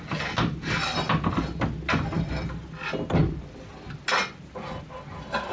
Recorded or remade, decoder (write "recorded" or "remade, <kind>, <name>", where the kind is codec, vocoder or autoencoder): recorded